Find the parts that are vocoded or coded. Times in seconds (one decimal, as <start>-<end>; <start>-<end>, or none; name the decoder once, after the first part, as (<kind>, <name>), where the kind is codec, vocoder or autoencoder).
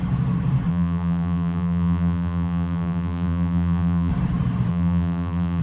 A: 0.7-4.1 (vocoder, BigVGAN v2); 4.7-5.6